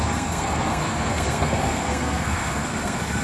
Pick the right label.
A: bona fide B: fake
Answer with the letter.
B